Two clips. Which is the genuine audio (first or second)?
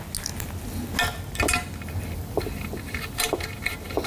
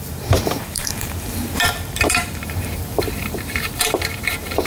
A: first